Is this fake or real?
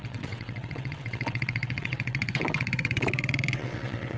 fake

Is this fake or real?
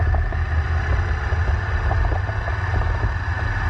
real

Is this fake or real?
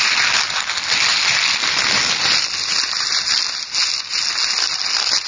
real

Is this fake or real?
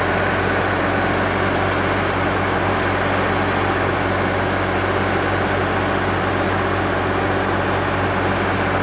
real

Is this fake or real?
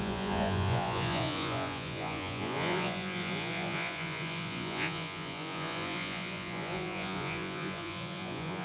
fake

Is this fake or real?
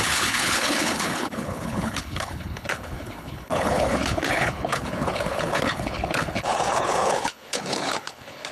fake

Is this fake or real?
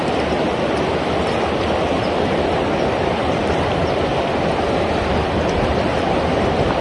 real